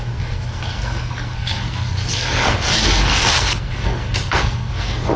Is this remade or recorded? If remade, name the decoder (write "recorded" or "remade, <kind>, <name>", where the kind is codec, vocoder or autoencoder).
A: remade, codec, SNAC